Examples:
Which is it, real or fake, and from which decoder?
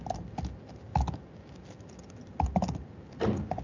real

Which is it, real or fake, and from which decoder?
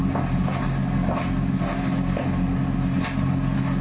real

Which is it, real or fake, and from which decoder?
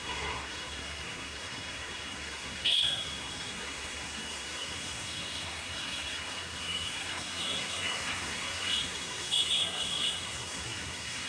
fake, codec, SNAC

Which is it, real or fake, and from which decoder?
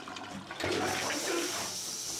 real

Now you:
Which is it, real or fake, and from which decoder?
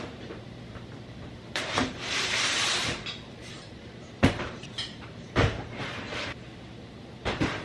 fake, vocoder, BigVGAN v2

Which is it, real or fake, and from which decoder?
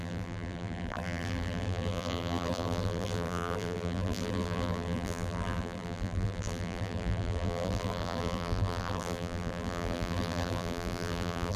fake, vocoder, BigVGAN v2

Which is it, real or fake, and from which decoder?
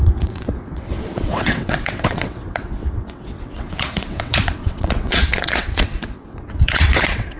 fake, vocoder, WaveNeXt